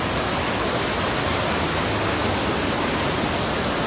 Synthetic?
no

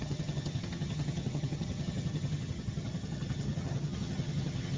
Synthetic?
yes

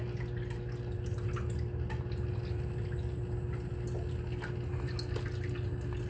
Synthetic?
no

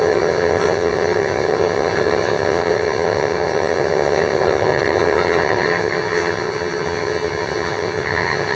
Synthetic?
yes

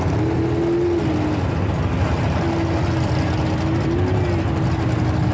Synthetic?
no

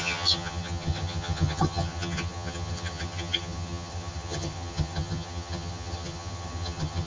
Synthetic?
yes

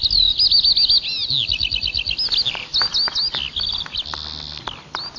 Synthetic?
no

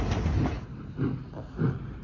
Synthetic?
no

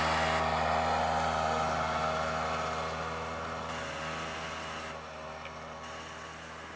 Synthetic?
no